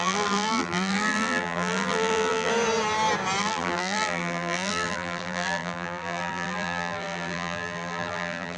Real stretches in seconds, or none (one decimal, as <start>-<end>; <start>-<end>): 2.5-3.4